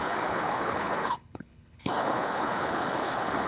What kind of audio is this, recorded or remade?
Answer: remade